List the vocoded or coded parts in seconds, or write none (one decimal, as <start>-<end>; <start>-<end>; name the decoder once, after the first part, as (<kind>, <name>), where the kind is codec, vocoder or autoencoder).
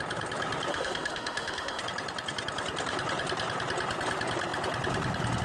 0.7-1.8 (autoencoder, DAC-VAE)